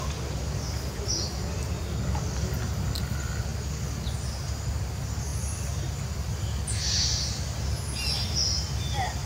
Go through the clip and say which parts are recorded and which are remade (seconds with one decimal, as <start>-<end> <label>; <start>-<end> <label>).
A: 0.0-9.3 recorded